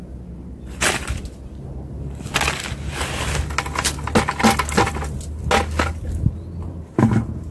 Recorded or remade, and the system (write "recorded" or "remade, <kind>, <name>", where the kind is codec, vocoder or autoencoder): recorded